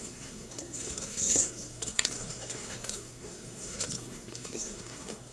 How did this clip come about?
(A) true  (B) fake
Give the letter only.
B